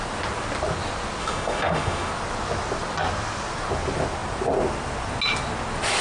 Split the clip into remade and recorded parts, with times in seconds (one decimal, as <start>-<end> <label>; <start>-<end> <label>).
0.0-1.2 recorded; 1.2-2.1 remade; 2.1-6.0 recorded